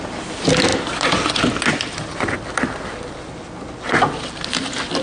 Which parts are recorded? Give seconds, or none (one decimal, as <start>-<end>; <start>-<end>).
0.0-5.0